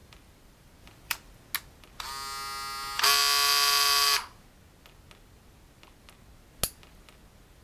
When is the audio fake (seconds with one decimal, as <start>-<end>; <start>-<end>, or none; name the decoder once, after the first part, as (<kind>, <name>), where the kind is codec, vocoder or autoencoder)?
0.0-1.3 (vocoder, BigVGAN v2)